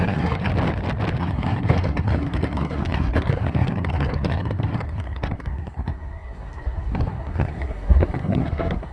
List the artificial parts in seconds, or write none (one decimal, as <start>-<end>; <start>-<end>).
0.0-0.5; 1.2-8.9